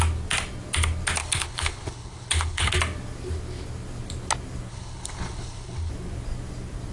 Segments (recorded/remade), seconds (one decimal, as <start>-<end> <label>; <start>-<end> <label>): 0.0-1.2 recorded; 1.2-2.7 remade; 2.7-4.7 recorded; 4.7-5.9 remade; 5.9-6.9 recorded